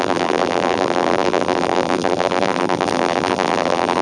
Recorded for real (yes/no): no